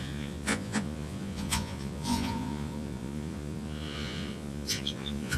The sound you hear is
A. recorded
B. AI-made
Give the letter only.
B